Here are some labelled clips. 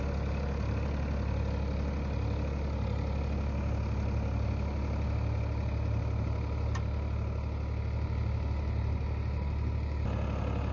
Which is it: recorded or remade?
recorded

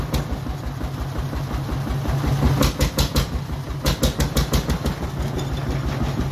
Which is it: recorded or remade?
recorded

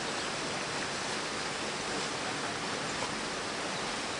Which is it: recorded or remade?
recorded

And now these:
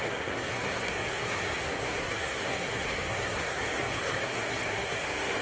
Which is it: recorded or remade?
remade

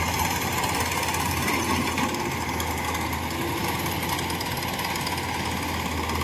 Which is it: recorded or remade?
recorded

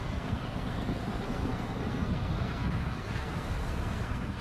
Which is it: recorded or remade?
remade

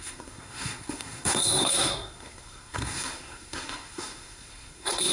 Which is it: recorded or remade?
remade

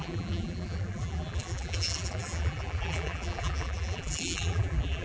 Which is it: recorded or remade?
remade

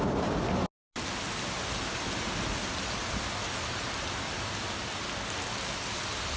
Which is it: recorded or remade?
recorded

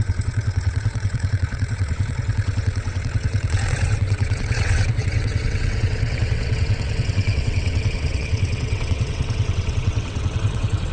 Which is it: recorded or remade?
remade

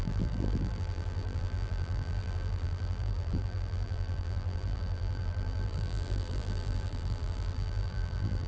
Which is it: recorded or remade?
remade